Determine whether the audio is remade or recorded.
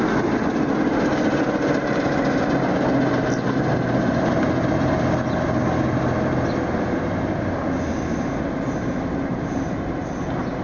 recorded